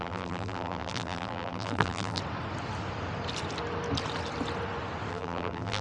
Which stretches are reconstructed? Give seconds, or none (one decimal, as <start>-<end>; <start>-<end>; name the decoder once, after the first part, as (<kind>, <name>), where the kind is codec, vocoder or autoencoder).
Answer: 0.0-2.2 (vocoder, BigVGAN v2); 5.1-5.8